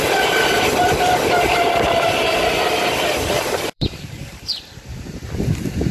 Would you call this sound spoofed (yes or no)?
yes